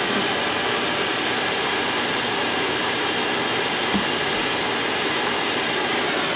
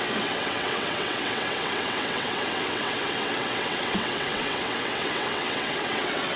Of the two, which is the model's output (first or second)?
second